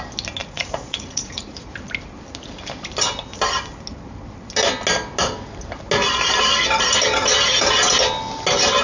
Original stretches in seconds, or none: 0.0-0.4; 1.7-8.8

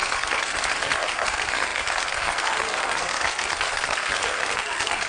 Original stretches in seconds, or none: none

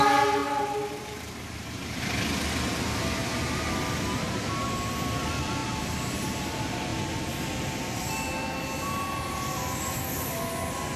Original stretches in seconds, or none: 0.0-0.4; 2.0-11.0

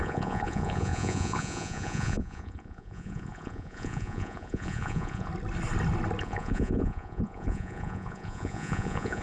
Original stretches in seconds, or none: 5.3-6.2

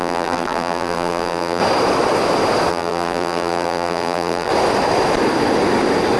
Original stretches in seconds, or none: 1.6-2.7; 4.5-6.2